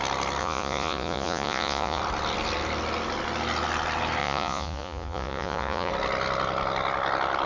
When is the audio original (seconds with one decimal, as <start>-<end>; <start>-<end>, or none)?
0.0-0.4; 2.0-4.2; 5.9-7.5